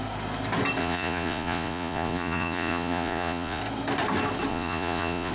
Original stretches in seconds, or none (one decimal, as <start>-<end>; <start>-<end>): 0.0-0.8; 3.6-4.5